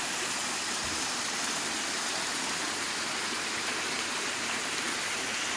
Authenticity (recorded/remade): recorded